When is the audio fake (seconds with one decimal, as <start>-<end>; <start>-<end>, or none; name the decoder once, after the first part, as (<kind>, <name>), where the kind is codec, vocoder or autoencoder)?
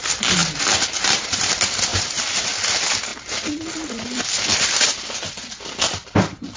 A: none